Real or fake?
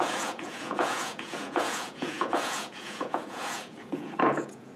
fake